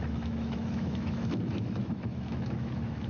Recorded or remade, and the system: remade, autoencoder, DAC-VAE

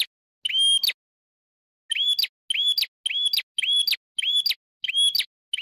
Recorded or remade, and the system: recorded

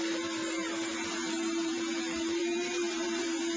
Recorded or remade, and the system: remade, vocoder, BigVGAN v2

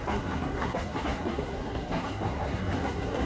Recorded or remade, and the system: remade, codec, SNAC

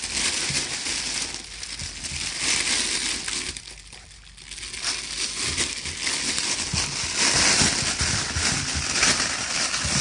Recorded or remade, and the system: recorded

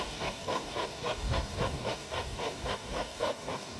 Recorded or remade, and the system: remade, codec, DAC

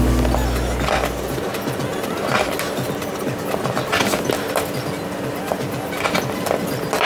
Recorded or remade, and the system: recorded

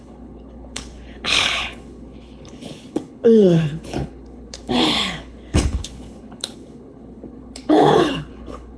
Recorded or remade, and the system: remade, codec, HILCodec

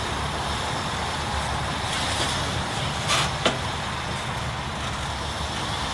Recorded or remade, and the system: recorded